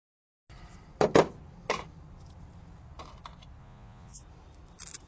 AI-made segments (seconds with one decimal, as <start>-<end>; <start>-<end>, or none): 3.6-4.2

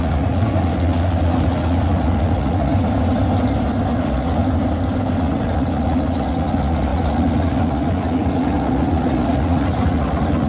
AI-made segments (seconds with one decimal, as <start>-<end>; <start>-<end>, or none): 0.0-2.7; 3.9-4.4; 5.2-10.5

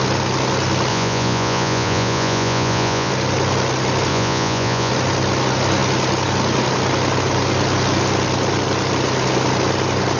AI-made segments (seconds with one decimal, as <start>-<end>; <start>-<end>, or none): 0.9-3.1; 4.1-4.9

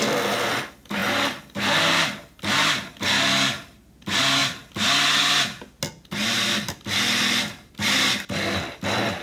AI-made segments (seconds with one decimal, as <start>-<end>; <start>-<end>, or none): none

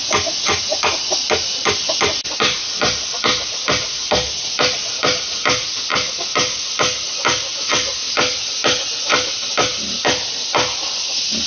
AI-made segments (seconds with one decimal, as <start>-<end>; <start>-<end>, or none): none

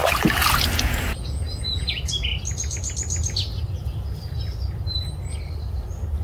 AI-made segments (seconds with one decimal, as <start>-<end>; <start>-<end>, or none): 0.8-2.3